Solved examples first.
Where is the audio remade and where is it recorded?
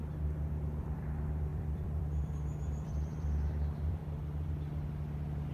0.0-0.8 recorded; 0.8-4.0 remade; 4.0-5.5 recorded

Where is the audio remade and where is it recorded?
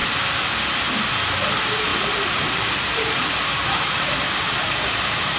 0.0-1.9 recorded; 1.9-5.4 remade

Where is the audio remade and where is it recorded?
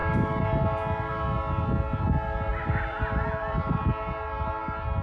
0.0-2.5 recorded; 2.5-3.8 remade; 3.8-5.0 recorded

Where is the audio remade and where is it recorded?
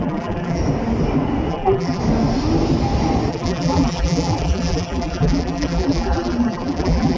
0.0-0.6 remade; 0.6-1.5 recorded; 1.5-2.0 remade; 2.0-3.3 recorded; 3.3-7.2 remade